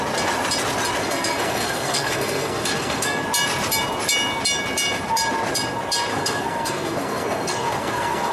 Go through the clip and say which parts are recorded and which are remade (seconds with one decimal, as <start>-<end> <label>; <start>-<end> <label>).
0.0-1.0 recorded; 1.0-3.2 remade; 3.2-6.1 recorded; 6.1-8.3 remade